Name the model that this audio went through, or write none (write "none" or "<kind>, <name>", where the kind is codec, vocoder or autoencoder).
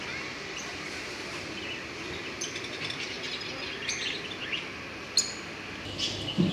none